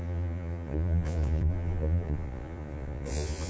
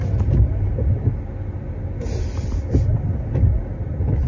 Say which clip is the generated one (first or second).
first